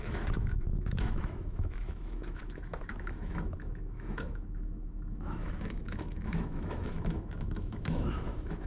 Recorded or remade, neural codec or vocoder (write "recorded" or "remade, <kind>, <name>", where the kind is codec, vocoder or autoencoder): remade, autoencoder, DAC-VAE